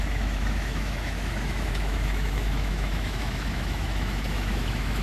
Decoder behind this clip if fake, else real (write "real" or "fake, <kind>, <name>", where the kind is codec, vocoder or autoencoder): fake, autoencoder, DAC-VAE